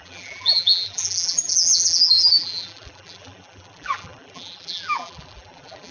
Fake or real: fake